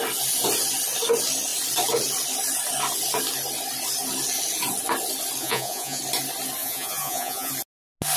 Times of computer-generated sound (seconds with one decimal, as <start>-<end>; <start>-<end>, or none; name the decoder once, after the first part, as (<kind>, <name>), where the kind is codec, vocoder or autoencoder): 5.4-6.0 (vocoder, Vocos); 6.6-7.5